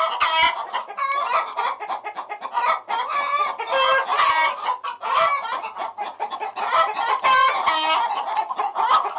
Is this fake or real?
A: real